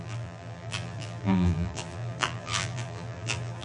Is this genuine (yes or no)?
no